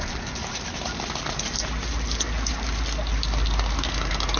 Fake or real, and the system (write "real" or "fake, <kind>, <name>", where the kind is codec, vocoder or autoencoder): real